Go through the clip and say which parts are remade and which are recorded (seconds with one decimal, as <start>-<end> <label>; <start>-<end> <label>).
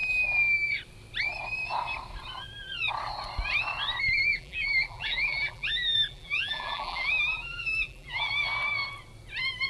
0.0-4.3 recorded; 4.3-8.3 remade; 8.3-9.7 recorded